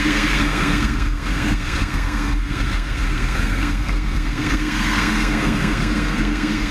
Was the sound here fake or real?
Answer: fake